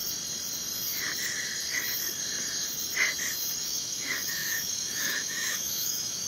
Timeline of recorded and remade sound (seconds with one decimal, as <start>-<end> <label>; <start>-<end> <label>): 0.0-3.6 recorded; 3.6-6.3 remade